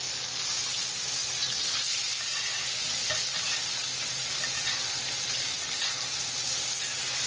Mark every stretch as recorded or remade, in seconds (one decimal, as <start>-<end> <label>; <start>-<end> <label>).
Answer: 0.0-7.3 recorded